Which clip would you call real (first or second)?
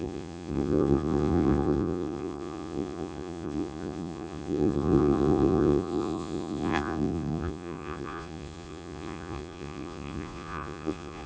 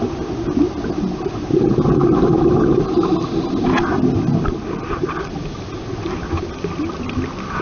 second